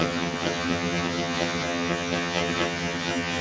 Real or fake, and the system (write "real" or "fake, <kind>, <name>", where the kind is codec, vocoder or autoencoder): fake, vocoder, HiFi-GAN